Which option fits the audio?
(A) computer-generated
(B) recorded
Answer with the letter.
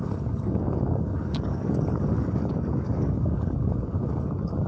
A